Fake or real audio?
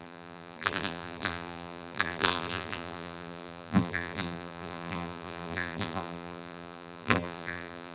fake